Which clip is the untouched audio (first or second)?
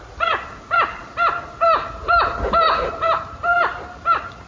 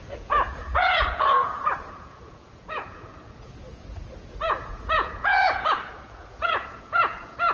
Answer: first